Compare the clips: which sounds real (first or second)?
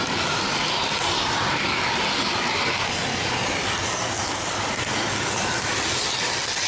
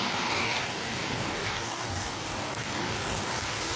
first